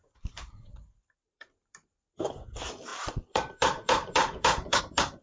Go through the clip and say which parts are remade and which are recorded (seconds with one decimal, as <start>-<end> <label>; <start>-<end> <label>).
0.0-5.2 remade